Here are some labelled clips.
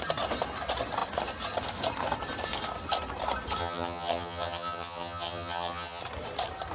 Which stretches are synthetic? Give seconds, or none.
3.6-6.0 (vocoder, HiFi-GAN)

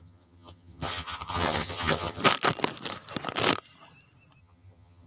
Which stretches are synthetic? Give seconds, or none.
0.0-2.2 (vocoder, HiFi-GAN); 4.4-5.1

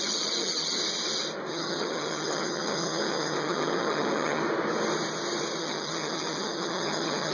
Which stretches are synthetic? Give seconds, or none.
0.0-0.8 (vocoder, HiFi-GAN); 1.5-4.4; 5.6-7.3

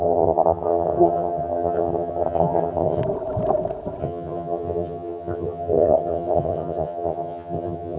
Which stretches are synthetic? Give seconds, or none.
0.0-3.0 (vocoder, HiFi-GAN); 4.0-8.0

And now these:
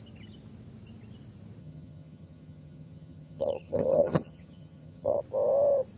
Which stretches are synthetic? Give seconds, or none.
1.6-5.2 (vocoder, HiFi-GAN)

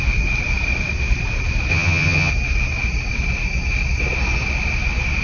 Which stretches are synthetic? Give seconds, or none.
1.7-2.3 (vocoder, HiFi-GAN)